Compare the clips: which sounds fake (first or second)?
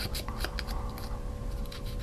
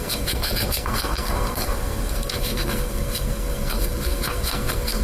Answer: second